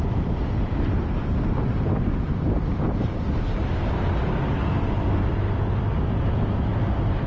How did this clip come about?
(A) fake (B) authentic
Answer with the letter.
B